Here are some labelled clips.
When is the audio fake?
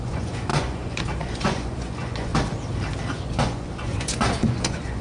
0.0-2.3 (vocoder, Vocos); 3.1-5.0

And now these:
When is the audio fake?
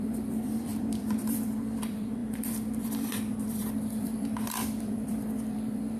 0.0-6.0 (vocoder, BigVGAN v2)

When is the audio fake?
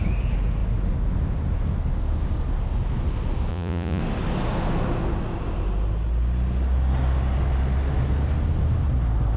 3.5-4.0 (vocoder, Vocos)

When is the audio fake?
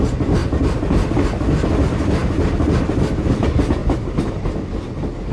0.4-1.1 (vocoder, BigVGAN v2); 3.8-4.5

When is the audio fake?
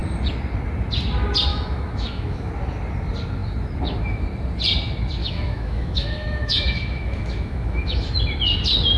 1.5-2.5 (autoencoder, DAC-VAE); 5.2-8.2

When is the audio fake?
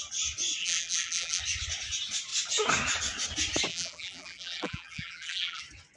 0.6-1.4 (vocoder, BigVGAN v2); 3.7-5.6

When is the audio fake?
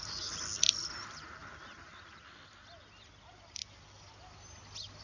1.0-2.2 (vocoder, BigVGAN v2)